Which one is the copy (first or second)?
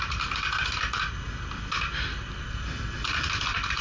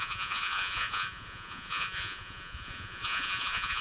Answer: second